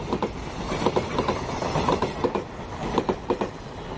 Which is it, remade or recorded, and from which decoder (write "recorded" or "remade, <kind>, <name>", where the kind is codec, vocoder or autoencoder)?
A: recorded